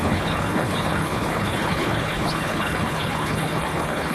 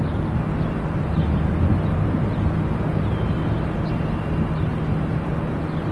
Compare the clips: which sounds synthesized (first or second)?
first